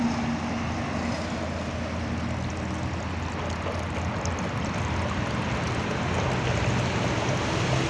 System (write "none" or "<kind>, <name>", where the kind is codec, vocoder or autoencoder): none